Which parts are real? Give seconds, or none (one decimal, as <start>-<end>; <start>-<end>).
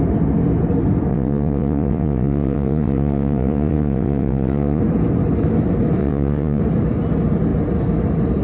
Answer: 0.0-1.1; 4.8-6.0; 6.6-8.4